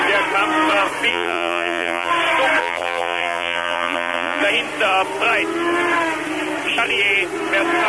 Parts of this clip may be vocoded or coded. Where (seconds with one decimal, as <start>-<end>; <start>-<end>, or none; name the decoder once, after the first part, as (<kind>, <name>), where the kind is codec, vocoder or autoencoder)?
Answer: 1.1-2.1 (vocoder, BigVGAN v2); 2.6-4.4